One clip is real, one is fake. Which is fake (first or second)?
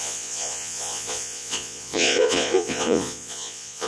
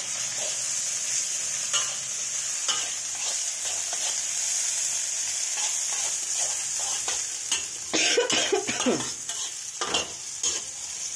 first